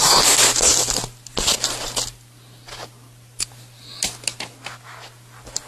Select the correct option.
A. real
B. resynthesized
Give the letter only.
A